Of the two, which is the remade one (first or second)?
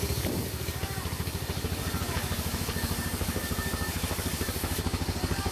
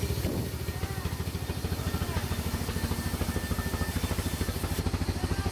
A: first